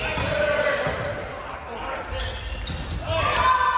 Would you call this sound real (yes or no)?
yes